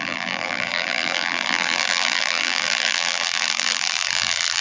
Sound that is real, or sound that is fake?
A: fake